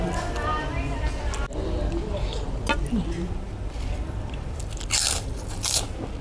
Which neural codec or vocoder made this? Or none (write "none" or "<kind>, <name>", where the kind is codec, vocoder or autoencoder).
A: none